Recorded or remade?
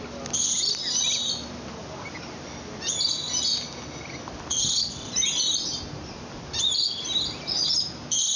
recorded